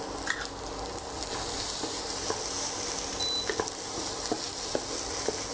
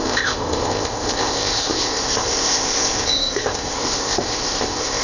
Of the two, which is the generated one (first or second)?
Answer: second